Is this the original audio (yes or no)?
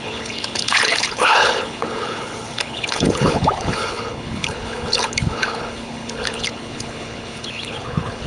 no